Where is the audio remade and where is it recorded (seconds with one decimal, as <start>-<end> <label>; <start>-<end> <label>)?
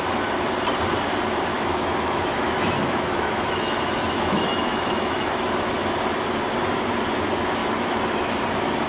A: 0.0-1.5 recorded; 1.5-5.3 remade; 5.3-7.6 recorded; 7.6-8.4 remade; 8.4-8.9 recorded